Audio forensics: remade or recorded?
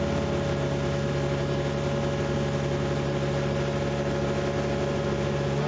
recorded